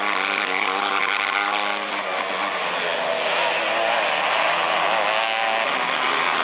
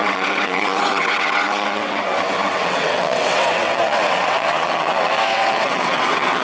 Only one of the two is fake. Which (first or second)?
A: second